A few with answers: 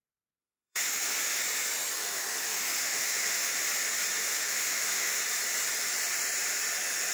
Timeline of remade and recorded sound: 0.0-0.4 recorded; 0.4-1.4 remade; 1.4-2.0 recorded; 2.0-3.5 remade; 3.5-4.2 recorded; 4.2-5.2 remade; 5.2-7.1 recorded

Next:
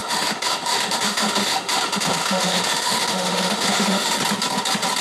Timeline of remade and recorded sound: 0.0-4.2 remade; 4.2-5.0 recorded

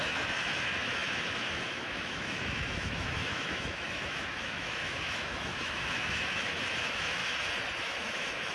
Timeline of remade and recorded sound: 0.0-7.2 remade; 7.2-7.8 recorded; 7.8-8.5 remade

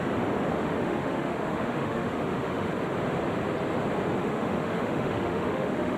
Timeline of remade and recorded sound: 0.0-0.5 recorded; 0.5-2.7 remade; 2.7-4.2 recorded; 4.2-6.0 remade

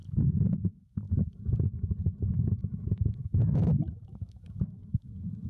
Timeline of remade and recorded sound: 0.0-1.4 remade; 1.4-2.6 recorded; 2.6-5.1 remade; 5.1-5.5 recorded

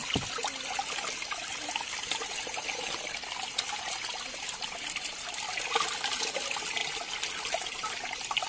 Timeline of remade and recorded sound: 0.0-8.5 recorded

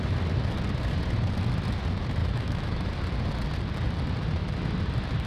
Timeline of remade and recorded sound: 0.0-2.2 recorded; 2.2-2.9 remade; 2.9-5.3 recorded